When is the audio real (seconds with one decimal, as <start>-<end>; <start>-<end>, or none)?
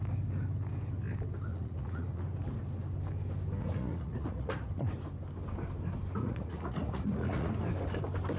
0.0-1.5; 2.2-3.6; 4.7-6.2; 7.5-8.4